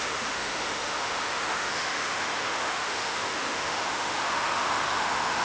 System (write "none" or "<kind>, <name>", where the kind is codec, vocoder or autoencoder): autoencoder, DAC-VAE